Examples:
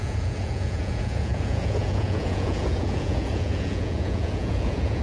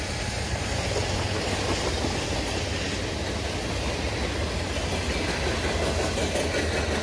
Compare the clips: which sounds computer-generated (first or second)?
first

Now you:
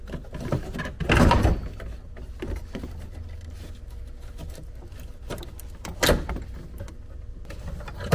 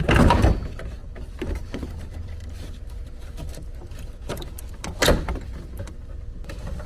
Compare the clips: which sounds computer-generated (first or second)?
second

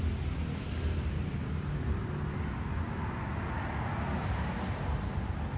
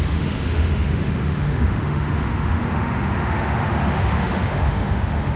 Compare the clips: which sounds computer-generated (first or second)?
second